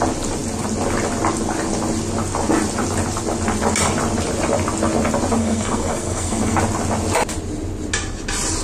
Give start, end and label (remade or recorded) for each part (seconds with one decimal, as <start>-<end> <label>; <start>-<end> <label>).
0.0-5.4 recorded; 5.4-6.6 remade; 6.6-8.6 recorded